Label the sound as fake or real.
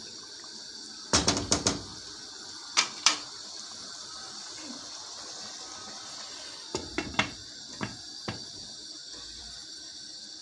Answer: fake